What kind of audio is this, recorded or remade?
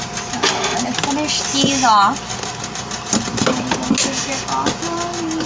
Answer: recorded